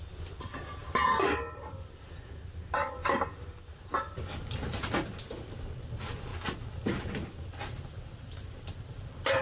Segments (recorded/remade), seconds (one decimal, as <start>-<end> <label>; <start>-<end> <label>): 0.0-9.4 recorded